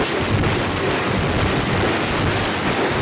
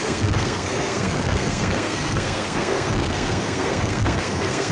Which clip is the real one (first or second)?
first